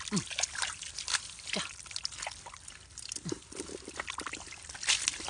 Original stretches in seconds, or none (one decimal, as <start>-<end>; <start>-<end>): 0.0-5.3